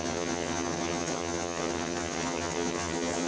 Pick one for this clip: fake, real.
fake